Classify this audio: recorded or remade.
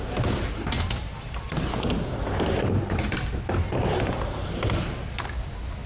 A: recorded